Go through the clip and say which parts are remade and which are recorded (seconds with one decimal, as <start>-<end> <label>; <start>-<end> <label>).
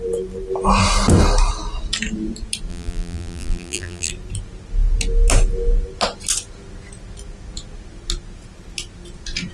0.0-2.7 recorded; 2.7-4.1 remade; 4.1-9.5 recorded